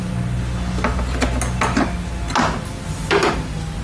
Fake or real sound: real